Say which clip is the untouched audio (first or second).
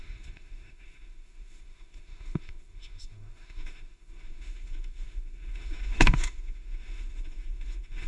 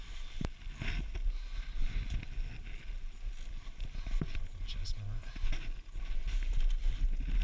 second